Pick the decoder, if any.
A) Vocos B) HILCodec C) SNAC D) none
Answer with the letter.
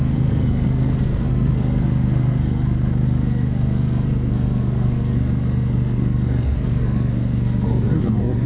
C